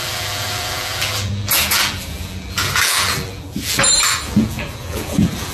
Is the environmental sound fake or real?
fake